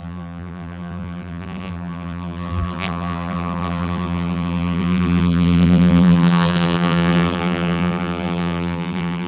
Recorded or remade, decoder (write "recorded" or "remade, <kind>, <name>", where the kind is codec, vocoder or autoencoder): remade, vocoder, BigVGAN v2